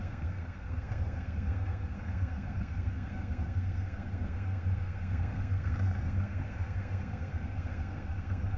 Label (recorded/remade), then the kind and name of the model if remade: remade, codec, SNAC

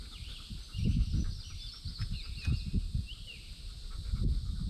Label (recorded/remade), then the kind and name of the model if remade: recorded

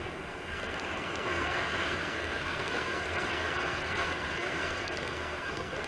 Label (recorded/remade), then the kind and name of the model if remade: remade, codec, SNAC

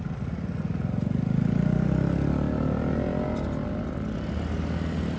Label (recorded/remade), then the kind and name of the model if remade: recorded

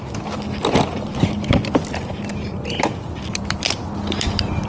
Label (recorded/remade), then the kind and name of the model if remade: recorded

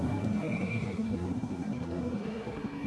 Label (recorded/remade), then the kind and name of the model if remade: remade, codec, SNAC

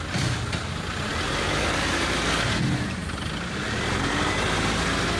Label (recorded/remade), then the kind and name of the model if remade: recorded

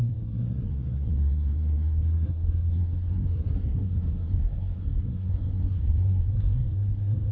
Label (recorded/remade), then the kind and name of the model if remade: remade, codec, SNAC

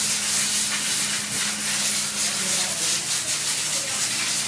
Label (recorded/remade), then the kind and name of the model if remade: recorded